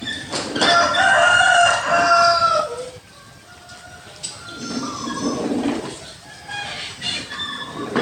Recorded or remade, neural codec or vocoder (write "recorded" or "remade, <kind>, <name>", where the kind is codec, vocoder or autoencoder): recorded